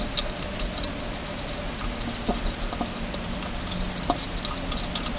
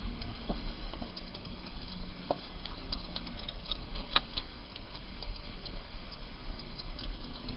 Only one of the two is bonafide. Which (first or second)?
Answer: first